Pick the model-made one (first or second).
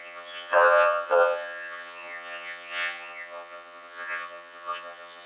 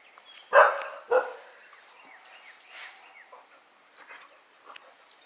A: first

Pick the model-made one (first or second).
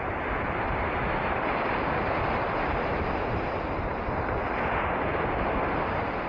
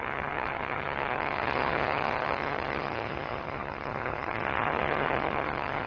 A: second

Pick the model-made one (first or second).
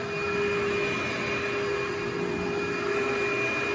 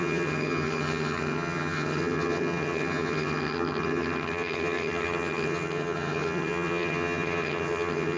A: second